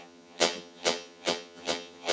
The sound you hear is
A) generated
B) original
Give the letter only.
A